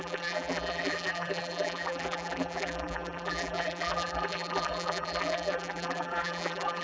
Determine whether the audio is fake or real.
fake